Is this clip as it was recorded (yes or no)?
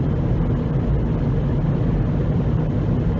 yes